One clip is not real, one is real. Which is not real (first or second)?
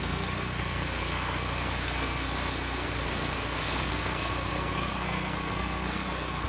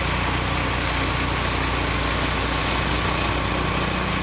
first